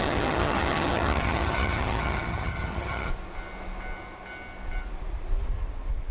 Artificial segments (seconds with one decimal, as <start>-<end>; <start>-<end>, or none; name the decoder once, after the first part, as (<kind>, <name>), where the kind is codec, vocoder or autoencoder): 0.0-3.1 (vocoder, HiFi-GAN)